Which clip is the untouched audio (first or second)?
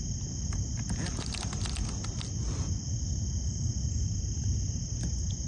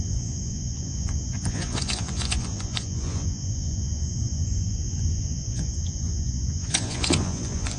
first